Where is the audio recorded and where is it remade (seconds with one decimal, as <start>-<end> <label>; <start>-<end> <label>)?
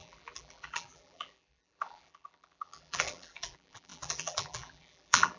0.0-5.4 remade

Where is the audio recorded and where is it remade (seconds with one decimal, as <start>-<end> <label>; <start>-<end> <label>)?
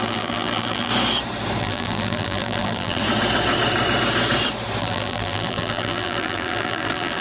0.0-0.9 remade; 0.9-1.6 recorded; 1.6-3.0 remade; 3.0-4.8 recorded; 4.8-7.2 remade